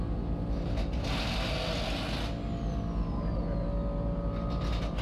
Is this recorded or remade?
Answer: recorded